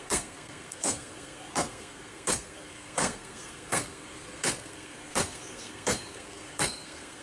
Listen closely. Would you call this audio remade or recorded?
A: remade